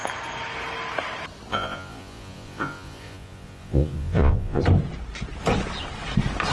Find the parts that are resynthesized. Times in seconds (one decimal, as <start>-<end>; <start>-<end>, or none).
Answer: 1.5-4.6